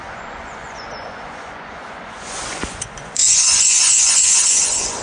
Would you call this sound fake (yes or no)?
yes